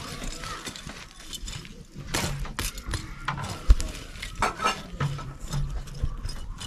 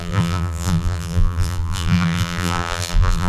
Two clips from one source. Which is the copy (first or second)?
second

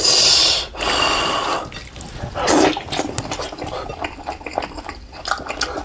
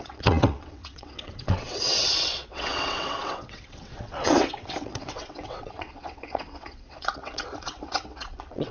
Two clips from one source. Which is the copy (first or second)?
second